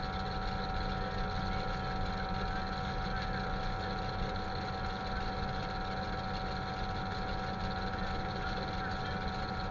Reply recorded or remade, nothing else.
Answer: recorded